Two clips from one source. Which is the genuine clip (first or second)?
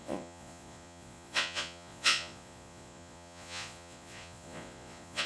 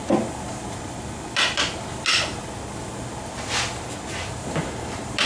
second